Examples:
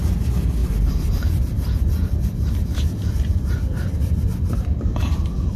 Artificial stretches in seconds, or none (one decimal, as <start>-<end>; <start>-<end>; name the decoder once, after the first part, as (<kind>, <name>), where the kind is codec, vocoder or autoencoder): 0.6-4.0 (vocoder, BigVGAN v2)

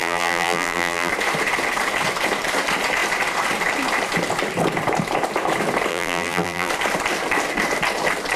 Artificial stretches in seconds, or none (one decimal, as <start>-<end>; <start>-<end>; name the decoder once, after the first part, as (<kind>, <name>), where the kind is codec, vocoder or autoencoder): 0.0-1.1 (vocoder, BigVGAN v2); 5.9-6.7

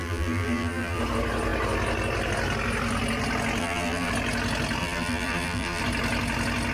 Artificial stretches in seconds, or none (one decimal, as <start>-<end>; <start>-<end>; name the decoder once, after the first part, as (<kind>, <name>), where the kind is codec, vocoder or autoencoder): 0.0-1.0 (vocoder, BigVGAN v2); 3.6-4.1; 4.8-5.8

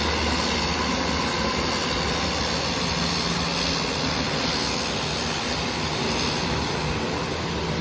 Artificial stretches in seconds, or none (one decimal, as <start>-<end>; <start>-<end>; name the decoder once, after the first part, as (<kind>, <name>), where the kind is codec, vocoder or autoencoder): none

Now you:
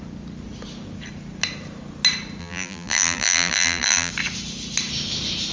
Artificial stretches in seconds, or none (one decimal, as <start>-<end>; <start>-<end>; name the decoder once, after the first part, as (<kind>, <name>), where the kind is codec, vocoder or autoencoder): 2.4-4.1 (vocoder, BigVGAN v2)